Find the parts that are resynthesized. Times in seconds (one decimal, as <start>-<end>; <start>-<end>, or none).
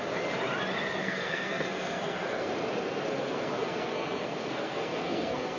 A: 1.0-2.5; 3.2-5.6